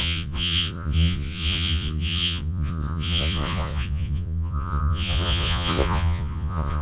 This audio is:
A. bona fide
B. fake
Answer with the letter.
B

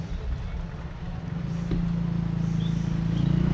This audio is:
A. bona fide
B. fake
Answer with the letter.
A